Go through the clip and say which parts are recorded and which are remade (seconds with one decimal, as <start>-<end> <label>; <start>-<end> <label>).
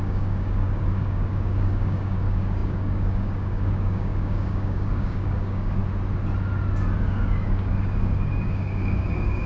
0.0-5.8 remade; 5.8-7.0 recorded; 7.0-9.5 remade